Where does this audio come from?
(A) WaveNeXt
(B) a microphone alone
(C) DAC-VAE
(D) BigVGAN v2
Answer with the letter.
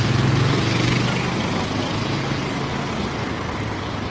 B